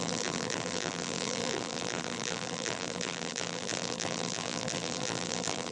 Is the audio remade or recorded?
remade